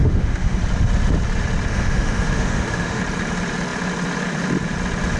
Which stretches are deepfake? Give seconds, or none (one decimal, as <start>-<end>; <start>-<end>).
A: 0.0-0.6; 1.7-3.0